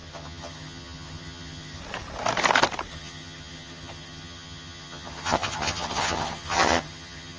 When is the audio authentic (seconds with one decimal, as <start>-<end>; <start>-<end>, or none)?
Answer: 1.8-2.9